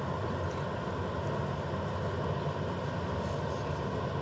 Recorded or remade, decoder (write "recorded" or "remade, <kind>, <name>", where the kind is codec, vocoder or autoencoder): recorded